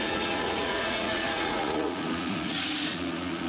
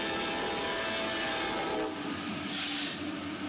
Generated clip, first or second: first